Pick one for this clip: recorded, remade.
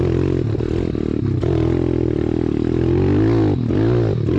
recorded